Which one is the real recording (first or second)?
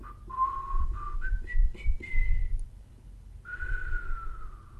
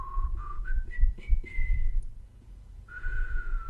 first